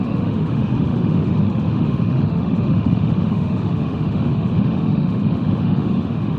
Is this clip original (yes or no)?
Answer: no